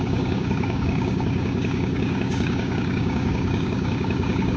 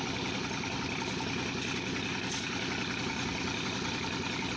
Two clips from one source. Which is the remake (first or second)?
first